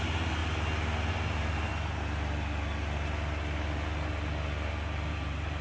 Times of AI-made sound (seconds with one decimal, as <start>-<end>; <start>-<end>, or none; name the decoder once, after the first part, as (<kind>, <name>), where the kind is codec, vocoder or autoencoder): 0.0-0.4 (vocoder, BigVGAN v2); 1.1-1.7; 5.1-5.6